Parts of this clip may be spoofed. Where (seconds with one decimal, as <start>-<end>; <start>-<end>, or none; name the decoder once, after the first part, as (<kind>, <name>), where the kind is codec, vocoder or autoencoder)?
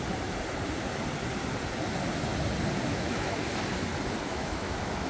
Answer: 2.9-3.4 (autoencoder, DAC-VAE); 4.3-5.1